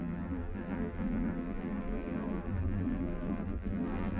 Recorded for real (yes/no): no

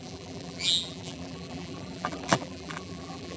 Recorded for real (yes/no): no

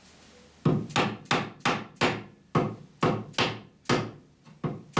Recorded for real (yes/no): yes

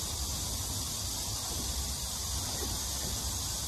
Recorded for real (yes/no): yes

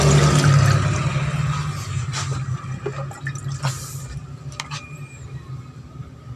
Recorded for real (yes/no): yes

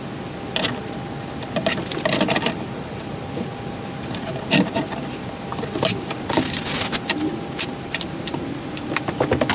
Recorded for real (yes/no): yes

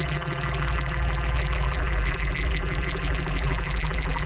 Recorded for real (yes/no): no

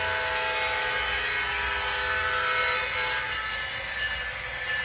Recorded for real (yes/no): yes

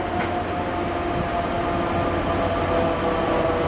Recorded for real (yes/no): yes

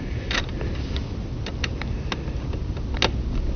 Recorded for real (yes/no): yes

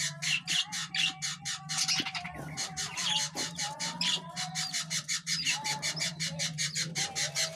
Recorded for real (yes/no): no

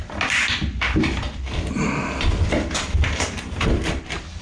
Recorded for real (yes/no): no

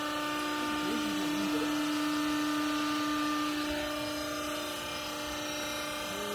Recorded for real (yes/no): yes